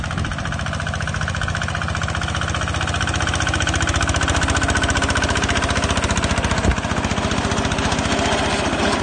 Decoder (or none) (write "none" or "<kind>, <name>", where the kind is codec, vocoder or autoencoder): none